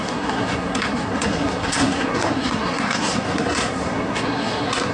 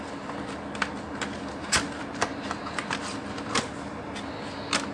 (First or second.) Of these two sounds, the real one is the second